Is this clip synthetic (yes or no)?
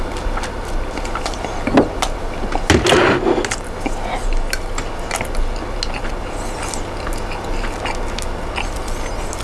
no